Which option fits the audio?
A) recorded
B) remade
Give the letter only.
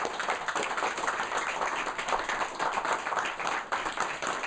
A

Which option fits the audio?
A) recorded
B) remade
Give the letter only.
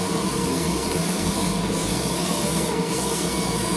B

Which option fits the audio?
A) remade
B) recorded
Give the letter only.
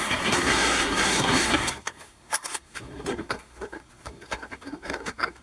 A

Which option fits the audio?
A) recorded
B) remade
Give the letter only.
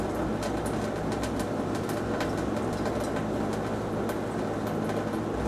A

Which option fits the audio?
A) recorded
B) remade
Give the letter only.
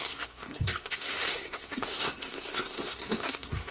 B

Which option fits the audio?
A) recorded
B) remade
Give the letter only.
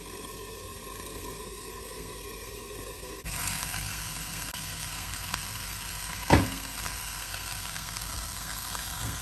B